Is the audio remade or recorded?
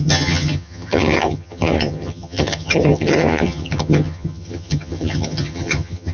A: remade